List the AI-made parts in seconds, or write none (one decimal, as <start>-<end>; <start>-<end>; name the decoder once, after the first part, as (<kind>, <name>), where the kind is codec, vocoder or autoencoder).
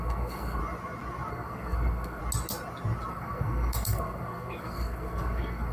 0.0-0.6 (codec, SNAC); 1.3-2.2; 3.1-5.7